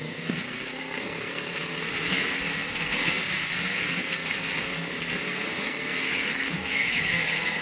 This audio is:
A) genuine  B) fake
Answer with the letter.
B